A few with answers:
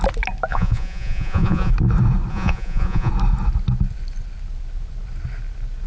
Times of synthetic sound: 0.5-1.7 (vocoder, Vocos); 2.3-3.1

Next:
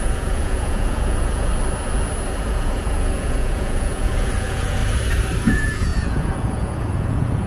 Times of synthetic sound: 0.0-1.5 (vocoder, Vocos); 2.4-4.8; 5.4-7.5

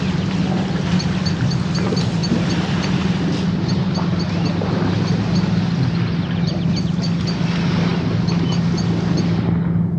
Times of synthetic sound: none